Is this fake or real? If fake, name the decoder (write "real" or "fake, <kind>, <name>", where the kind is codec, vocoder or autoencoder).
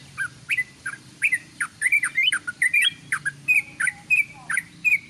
fake, vocoder, BigVGAN v2